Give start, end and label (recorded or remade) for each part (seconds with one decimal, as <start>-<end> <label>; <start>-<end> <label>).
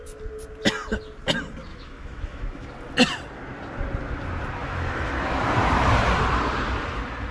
0.0-1.7 recorded; 1.7-2.7 remade; 2.7-4.6 recorded; 4.6-5.1 remade; 5.1-7.3 recorded